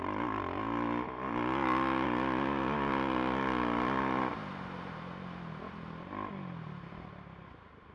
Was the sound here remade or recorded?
recorded